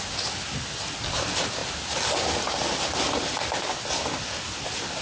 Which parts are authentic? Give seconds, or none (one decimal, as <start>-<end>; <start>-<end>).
0.0-5.0